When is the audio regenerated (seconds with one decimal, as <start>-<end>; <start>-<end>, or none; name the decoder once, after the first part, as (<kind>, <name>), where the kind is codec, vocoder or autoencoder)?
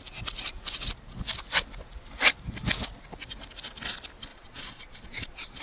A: 4.3-5.6 (vocoder, Vocos)